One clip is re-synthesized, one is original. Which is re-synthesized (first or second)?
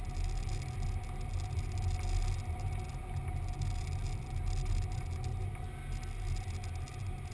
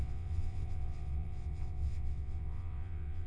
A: second